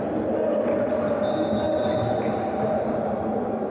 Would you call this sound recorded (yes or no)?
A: yes